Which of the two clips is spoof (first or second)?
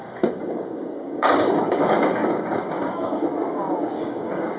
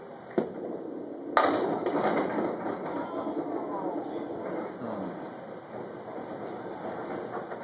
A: first